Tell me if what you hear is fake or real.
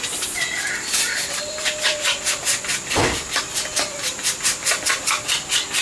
fake